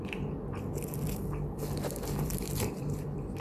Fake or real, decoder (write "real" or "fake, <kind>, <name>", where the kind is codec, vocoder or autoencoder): fake, vocoder, BigVGAN v2